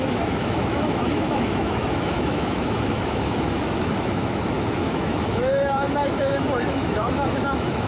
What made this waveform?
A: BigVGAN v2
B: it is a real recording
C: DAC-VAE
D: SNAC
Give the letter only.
C